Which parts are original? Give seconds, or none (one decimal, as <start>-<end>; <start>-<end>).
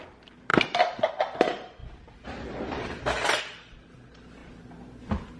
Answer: 0.0-5.4